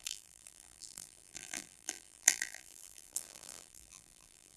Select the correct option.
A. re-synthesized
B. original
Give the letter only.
A